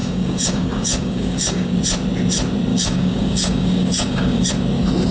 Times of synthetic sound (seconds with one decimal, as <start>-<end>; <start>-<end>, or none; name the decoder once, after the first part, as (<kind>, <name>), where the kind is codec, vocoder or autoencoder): 0.0-1.8 (codec, DAC); 2.7-4.5